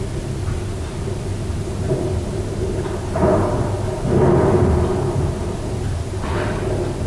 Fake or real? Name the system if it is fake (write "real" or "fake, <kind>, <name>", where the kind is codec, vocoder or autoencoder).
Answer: real